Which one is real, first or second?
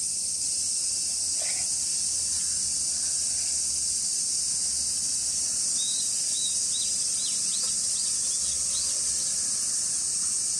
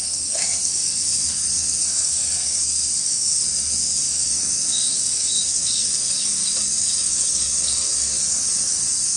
first